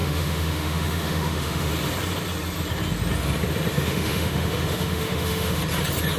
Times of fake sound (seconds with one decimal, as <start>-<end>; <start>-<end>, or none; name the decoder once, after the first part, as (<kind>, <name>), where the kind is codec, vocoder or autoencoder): 0.0-1.7 (autoencoder, DAC-VAE); 3.7-5.6

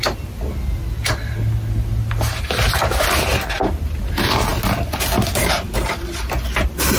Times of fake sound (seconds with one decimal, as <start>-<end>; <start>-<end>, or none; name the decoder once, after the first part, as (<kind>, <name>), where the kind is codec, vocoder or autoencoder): none

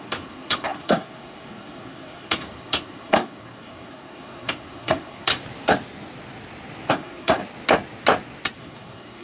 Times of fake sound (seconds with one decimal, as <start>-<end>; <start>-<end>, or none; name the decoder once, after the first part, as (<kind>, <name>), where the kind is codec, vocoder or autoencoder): 0.0-5.3 (codec, SNAC); 6.9-7.4; 8.6-9.2

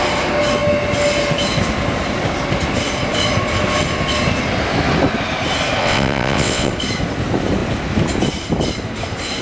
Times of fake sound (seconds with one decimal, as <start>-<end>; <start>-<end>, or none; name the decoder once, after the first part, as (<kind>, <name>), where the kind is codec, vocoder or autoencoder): 5.8-6.7 (vocoder, WaveNeXt)

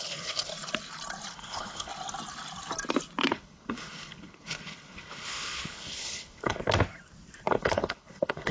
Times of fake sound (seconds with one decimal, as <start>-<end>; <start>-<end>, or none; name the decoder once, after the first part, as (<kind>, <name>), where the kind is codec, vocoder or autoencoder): 0.0-0.5 (codec, HILCodec); 1.3-1.9; 3.3-6.6; 7.5-8.5